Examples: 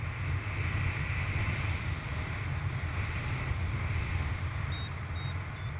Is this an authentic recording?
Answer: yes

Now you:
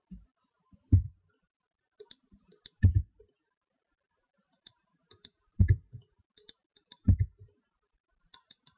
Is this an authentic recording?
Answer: yes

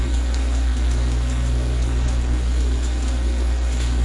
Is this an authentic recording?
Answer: no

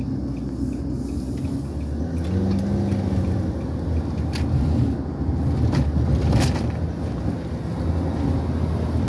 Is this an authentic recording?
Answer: yes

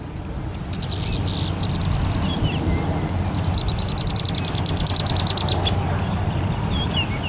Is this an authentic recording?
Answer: yes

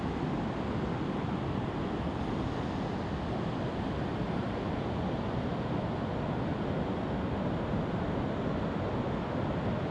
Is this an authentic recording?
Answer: yes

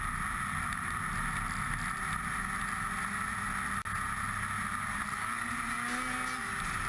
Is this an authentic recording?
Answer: yes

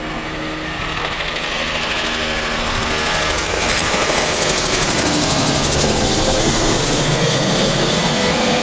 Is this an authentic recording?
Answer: no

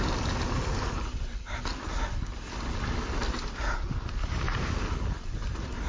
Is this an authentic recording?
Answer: yes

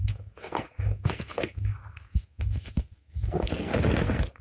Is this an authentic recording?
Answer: no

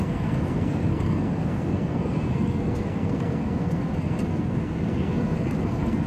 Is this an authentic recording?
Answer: no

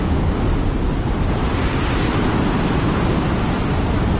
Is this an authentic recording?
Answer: yes